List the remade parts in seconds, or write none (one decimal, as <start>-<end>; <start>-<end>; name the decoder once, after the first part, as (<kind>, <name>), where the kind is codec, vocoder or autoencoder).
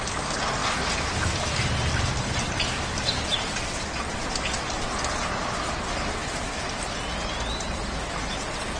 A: none